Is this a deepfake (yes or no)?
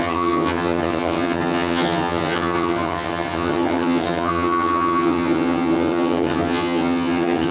yes